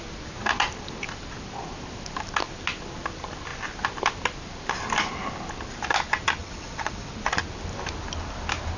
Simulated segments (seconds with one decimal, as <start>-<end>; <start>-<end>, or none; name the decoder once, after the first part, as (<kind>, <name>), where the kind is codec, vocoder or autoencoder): 6.4-7.1 (vocoder, WaveNeXt)